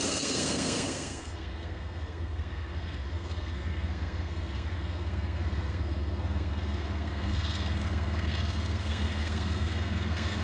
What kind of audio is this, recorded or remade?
remade